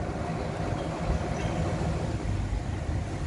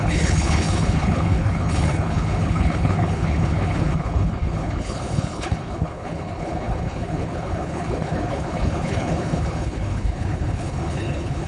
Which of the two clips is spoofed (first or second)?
second